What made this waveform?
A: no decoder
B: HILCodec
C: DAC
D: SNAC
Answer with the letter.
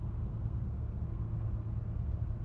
D